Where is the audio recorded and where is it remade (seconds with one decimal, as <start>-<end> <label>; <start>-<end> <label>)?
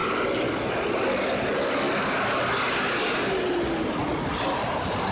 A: 0.0-5.1 recorded